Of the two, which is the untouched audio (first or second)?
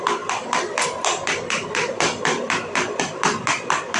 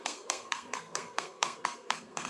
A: first